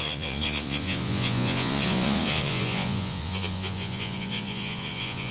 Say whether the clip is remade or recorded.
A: remade